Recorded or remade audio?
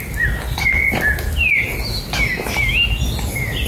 recorded